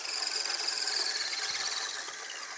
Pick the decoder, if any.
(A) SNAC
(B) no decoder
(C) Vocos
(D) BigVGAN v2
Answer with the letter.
D